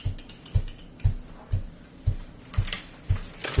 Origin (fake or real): real